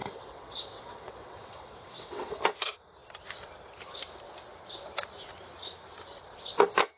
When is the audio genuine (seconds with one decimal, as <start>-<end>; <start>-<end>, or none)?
2.4-7.0